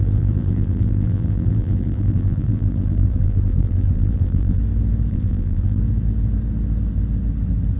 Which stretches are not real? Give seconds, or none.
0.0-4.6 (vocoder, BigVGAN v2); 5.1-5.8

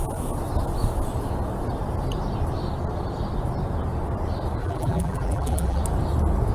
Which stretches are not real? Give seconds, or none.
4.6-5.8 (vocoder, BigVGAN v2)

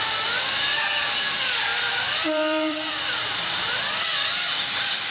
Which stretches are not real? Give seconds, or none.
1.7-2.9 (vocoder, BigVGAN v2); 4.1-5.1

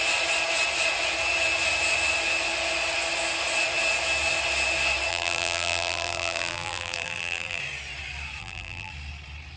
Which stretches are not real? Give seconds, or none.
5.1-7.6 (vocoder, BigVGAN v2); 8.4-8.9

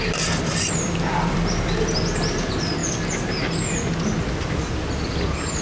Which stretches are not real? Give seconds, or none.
0.0-2.8 (vocoder, BigVGAN v2); 4.3-5.6

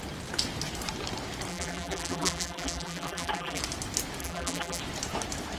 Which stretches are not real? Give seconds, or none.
1.5-3.6 (vocoder, BigVGAN v2); 4.2-4.8

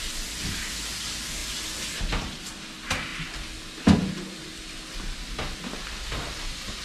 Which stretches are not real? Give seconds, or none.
none

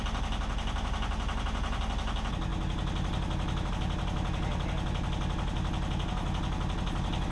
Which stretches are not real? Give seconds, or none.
none